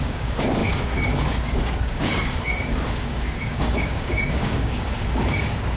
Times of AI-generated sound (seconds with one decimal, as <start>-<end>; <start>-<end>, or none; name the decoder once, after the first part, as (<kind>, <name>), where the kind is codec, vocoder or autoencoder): 0.0-5.8 (codec, DAC)

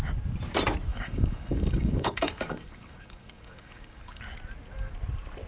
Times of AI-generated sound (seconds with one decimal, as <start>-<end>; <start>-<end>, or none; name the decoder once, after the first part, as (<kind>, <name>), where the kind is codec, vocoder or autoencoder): 0.9-4.2 (codec, DAC)

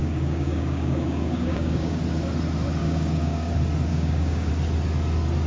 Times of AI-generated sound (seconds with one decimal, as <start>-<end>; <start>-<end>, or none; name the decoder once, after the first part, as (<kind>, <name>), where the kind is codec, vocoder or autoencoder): 0.0-2.0 (codec, DAC); 2.8-3.5; 3.9-4.5

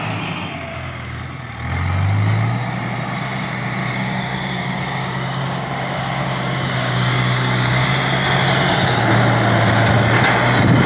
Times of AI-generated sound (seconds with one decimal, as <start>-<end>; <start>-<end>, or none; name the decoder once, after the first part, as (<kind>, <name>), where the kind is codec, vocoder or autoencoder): 0.7-1.2 (codec, DAC); 3.8-7.9

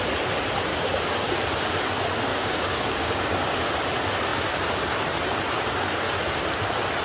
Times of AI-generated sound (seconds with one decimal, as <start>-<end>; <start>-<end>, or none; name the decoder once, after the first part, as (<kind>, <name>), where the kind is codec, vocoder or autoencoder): 0.7-1.3 (codec, DAC); 2.3-3.7